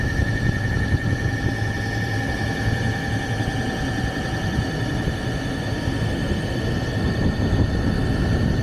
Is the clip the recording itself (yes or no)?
yes